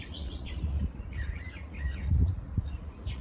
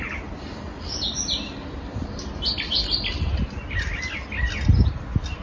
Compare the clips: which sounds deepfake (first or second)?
first